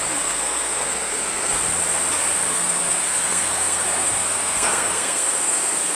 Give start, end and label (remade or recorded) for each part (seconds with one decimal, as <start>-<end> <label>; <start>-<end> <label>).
0.0-1.6 remade; 1.6-2.5 recorded; 2.5-5.9 remade